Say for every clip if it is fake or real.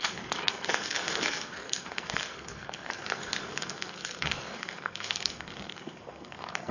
fake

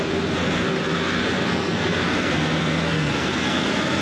fake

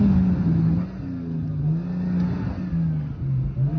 real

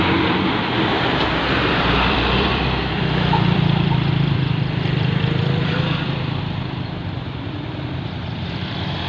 fake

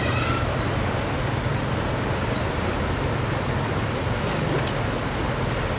real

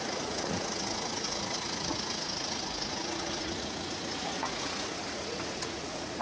fake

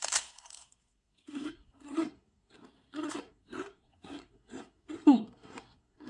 fake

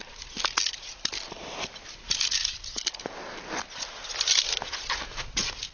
real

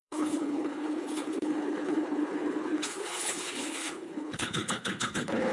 fake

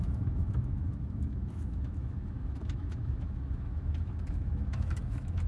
fake